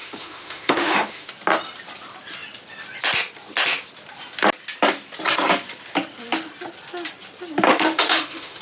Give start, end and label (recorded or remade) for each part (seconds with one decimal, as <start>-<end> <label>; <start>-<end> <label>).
0.0-1.3 remade; 1.3-7.7 recorded; 7.7-8.6 remade